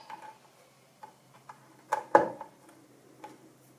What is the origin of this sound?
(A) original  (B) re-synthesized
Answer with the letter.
A